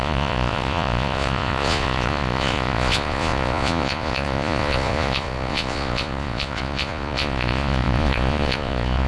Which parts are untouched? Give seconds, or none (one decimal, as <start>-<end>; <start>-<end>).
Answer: none